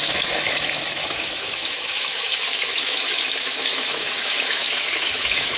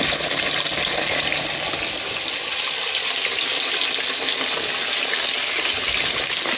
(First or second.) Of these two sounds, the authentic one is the second